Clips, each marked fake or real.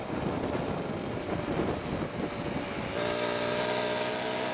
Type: real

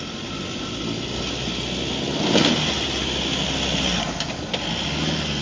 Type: real